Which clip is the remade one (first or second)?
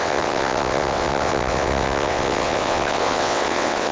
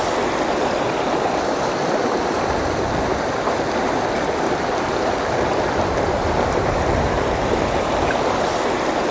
first